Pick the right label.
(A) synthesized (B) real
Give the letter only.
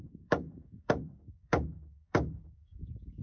A